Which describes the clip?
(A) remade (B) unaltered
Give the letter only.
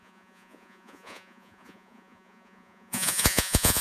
A